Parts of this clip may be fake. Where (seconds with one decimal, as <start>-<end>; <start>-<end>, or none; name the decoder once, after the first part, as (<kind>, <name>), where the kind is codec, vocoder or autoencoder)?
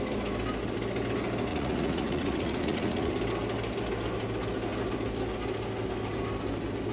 1.5-3.1 (vocoder, Vocos)